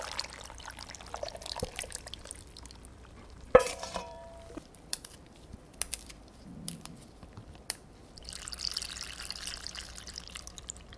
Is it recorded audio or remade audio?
remade